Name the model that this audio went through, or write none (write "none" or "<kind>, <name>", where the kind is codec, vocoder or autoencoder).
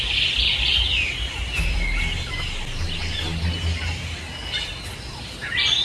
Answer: none